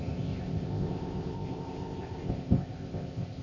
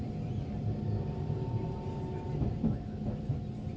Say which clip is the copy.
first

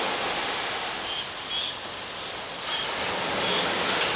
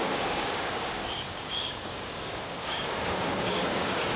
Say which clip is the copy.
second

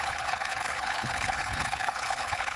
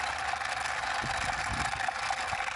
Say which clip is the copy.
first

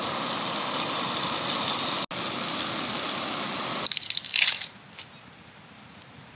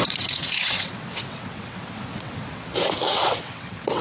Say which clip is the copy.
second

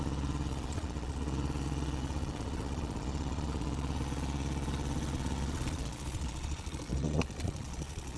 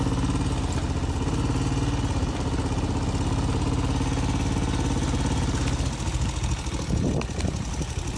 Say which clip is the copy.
first